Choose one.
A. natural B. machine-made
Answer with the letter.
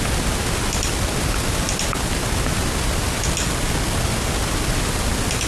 A